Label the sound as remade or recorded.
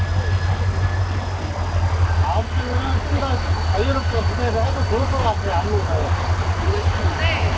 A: recorded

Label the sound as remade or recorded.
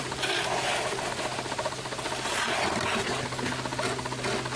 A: recorded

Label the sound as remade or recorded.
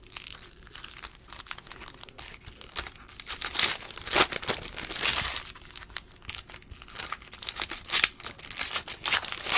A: recorded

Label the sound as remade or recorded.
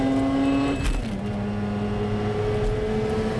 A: recorded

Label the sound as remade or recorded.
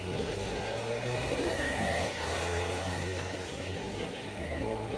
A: remade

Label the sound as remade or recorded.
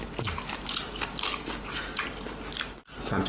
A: recorded